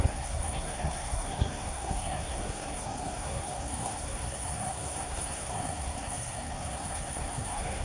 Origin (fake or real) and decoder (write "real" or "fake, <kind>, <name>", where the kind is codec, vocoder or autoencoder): fake, codec, SNAC